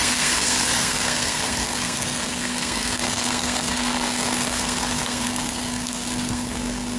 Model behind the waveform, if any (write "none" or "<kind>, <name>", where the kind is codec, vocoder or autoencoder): codec, SNAC